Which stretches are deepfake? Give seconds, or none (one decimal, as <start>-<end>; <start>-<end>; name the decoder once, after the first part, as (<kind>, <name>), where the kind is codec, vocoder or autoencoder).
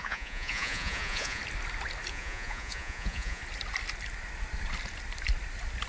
0.0-1.4 (vocoder, Vocos); 2.1-3.4